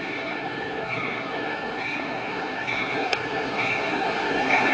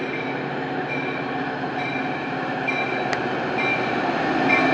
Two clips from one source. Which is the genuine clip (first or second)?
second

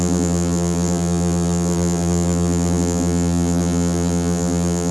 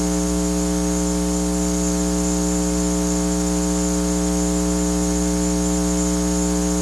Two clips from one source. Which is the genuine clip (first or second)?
second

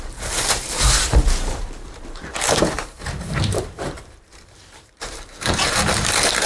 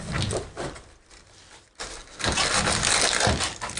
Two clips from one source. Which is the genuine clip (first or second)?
second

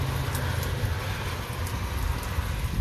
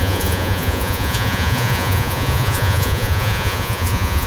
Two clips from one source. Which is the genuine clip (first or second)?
first